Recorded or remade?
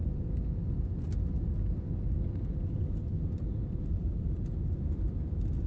recorded